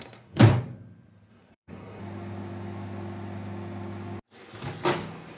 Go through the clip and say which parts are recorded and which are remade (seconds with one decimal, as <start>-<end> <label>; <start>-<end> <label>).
0.0-0.5 remade; 0.5-1.3 recorded; 1.3-2.0 remade; 2.0-5.4 recorded